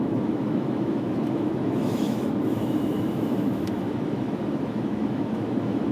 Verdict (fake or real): fake